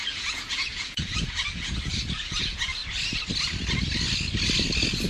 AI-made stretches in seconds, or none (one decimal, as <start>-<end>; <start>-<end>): 0.0-2.8